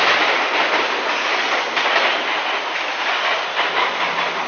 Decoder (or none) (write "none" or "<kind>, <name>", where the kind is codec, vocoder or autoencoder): none